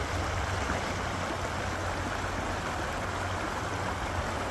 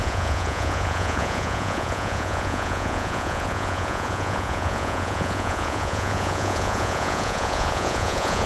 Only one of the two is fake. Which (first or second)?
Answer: second